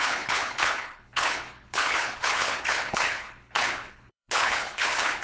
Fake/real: fake